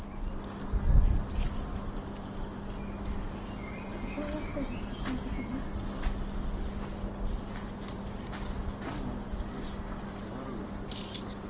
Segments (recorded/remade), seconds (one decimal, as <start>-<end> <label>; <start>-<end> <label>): 0.0-11.5 recorded